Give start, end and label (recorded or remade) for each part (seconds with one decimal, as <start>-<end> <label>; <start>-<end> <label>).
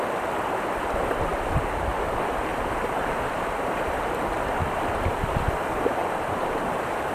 0.0-2.5 recorded; 2.5-4.0 remade; 4.0-6.0 recorded; 6.0-7.1 remade